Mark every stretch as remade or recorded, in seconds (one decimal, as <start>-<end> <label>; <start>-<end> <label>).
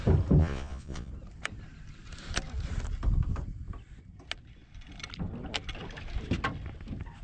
0.0-0.4 recorded; 0.4-1.1 remade; 1.1-7.2 recorded